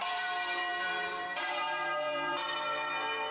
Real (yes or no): no